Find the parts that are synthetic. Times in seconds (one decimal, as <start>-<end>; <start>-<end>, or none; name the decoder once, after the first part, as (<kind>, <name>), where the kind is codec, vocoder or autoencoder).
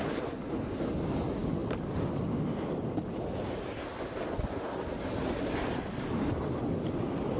4.9-6.3 (vocoder, BigVGAN v2)